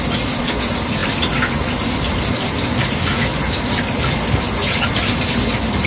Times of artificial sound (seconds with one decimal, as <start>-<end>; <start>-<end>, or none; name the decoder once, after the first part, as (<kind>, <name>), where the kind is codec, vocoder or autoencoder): none